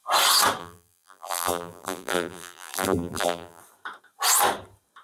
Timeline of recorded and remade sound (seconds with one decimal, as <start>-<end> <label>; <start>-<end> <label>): 0.0-0.6 recorded; 0.6-3.6 remade; 3.6-5.0 recorded